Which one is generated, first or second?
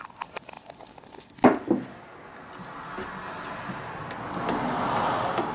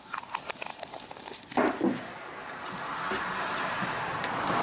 second